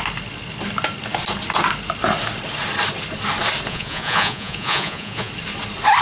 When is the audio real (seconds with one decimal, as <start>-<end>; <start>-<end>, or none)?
0.0-3.7; 5.3-6.0